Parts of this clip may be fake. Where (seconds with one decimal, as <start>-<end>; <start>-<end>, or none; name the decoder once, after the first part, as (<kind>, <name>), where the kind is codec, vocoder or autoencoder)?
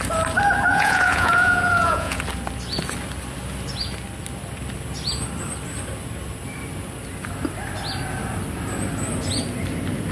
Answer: 0.7-2.2 (vocoder, Vocos)